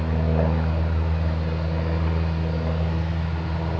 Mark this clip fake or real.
real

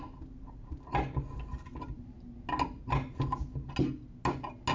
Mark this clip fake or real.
real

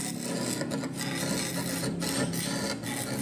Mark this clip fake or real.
real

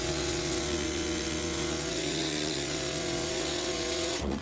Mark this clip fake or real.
fake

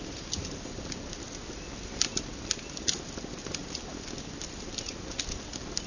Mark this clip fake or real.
real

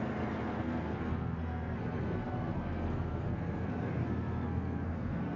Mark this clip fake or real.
fake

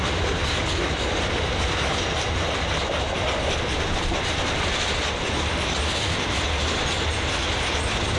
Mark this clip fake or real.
real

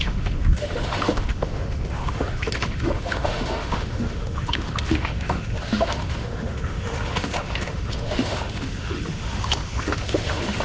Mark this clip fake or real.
fake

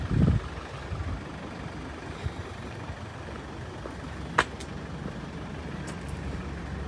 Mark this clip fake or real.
real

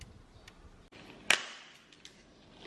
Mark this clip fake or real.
real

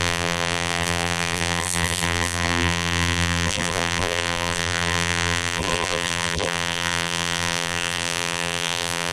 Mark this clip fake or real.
fake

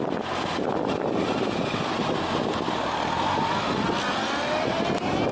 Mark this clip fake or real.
real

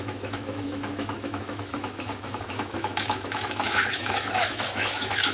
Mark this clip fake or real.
fake